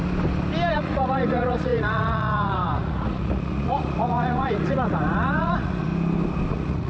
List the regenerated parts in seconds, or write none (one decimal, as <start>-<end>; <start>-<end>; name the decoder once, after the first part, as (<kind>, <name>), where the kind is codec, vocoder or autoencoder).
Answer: 0.7-5.9 (vocoder, Vocos); 6.5-6.9